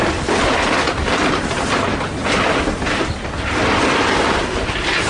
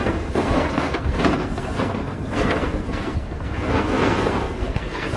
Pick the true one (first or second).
first